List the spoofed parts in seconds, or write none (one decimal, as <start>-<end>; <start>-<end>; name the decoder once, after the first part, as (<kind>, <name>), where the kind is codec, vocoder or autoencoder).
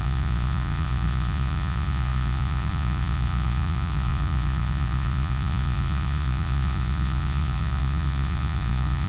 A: 0.0-9.1 (vocoder, Vocos)